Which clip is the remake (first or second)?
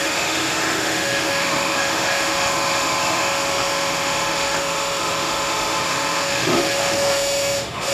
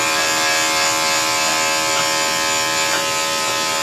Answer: first